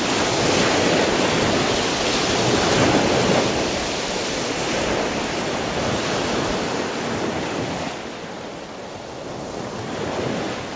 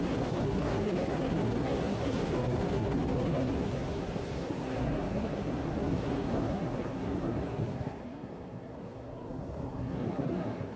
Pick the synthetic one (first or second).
second